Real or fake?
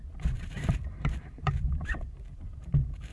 fake